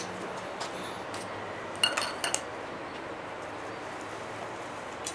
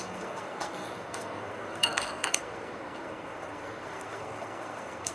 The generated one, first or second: second